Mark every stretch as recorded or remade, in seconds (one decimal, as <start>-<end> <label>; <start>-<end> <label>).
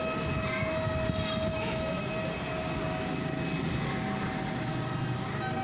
0.0-1.5 recorded; 1.5-2.1 remade; 2.1-5.6 recorded